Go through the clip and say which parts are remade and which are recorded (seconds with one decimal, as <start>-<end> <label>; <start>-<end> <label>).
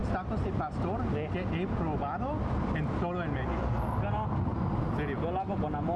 0.0-6.0 recorded